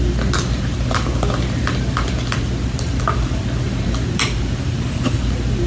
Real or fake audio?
fake